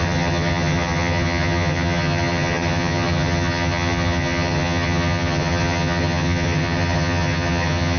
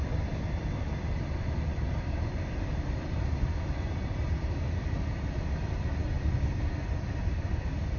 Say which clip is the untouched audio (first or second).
second